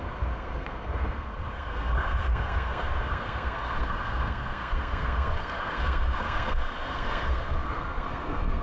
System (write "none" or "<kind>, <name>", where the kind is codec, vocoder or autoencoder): codec, SNAC